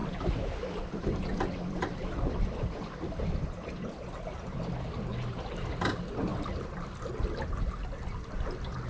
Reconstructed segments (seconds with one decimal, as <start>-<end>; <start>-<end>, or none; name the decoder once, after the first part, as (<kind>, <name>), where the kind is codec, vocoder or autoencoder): 0.0-4.6 (vocoder, BigVGAN v2); 6.3-7.0